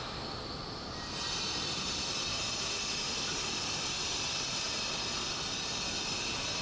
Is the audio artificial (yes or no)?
no